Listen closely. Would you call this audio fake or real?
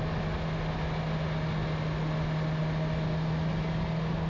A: real